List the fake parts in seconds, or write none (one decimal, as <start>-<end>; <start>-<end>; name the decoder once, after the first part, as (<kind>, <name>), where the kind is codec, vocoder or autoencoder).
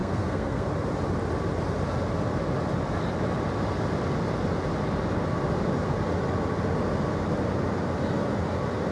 0.0-0.7 (codec, SNAC)